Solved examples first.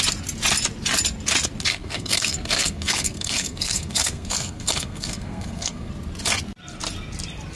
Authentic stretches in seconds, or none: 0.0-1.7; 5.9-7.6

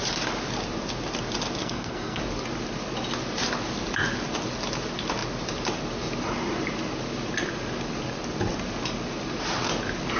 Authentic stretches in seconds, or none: 0.0-1.6; 2.2-10.2

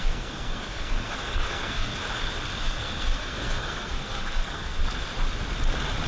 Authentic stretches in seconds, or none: 2.0-2.6; 4.8-6.1

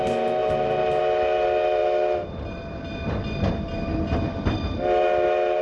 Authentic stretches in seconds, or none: 0.0-0.4; 1.0-5.6